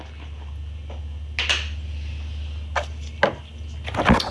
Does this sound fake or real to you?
real